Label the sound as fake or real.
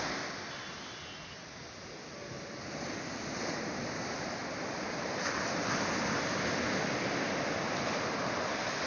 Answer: real